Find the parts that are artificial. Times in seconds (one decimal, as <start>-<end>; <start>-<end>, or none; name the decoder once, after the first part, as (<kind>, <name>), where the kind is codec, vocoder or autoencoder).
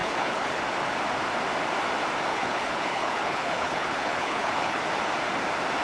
0.0-0.6 (codec, HILCodec); 2.3-4.8